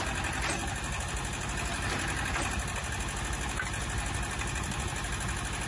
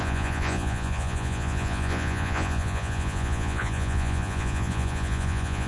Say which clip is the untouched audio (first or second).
first